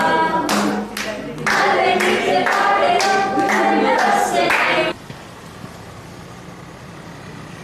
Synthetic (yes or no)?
no